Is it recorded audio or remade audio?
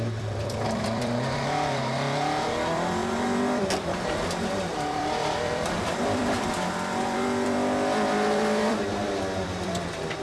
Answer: remade